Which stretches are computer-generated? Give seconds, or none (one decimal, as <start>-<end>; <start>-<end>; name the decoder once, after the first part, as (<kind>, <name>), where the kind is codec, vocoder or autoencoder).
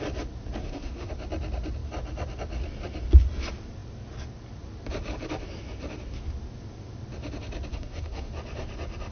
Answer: 0.6-1.1 (codec, SNAC); 7.7-8.3